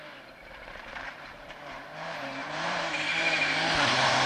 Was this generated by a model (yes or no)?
yes